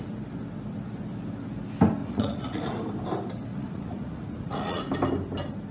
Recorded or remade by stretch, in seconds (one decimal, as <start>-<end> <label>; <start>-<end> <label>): 0.0-2.0 recorded; 2.0-2.7 remade; 2.7-3.5 recorded; 3.5-4.8 remade; 4.8-5.7 recorded